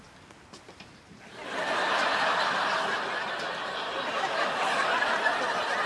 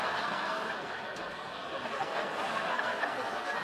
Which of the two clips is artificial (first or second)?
second